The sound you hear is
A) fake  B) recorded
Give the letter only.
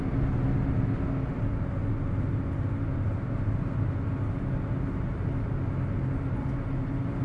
B